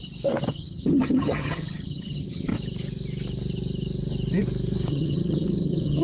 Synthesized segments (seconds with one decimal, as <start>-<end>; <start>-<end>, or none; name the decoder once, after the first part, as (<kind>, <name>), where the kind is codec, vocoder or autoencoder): 0.5-2.5 (vocoder, HiFi-GAN); 4.9-6.0